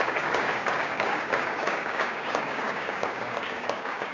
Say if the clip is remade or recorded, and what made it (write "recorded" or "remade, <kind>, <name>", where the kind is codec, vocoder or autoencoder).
remade, codec, DAC